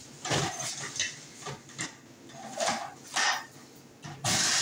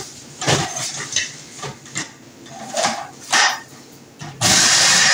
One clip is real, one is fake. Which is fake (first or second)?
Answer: second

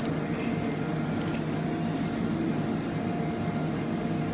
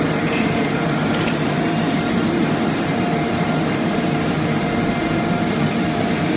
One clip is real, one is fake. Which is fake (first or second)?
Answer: second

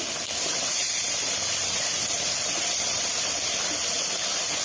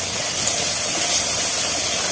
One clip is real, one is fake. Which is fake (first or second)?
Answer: first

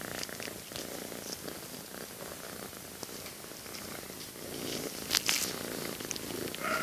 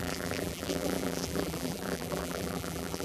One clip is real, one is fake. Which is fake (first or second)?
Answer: second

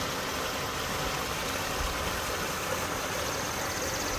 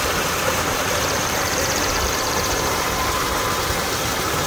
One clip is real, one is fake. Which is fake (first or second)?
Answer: second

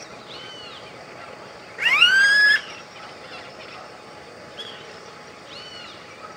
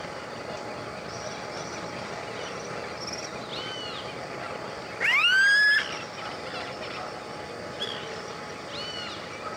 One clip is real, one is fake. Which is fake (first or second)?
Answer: first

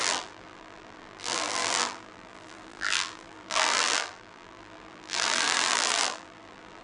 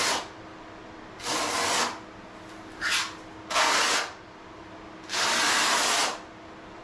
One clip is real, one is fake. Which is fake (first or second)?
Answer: first